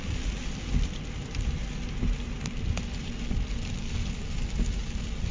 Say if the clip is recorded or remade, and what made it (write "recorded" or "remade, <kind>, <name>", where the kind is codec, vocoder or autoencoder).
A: recorded